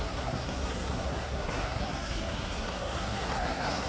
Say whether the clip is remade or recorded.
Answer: remade